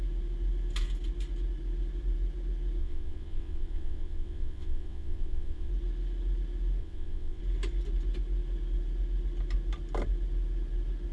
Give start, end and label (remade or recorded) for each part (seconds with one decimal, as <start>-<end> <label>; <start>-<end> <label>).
0.0-2.8 recorded; 2.8-5.7 remade; 5.7-6.8 recorded; 6.8-7.4 remade; 7.4-11.1 recorded